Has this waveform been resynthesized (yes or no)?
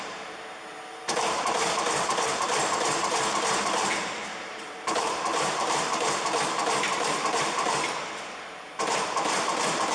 yes